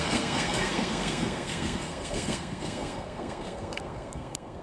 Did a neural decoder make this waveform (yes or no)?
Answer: yes